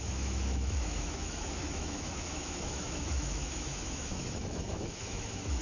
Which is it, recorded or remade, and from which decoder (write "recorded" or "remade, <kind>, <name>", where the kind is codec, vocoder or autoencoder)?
remade, autoencoder, DAC-VAE